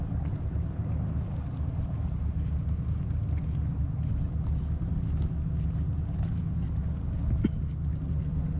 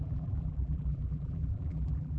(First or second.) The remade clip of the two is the second